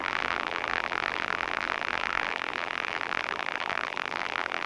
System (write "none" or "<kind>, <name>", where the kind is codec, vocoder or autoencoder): vocoder, BigVGAN v2